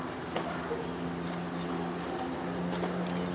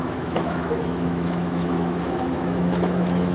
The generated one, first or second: second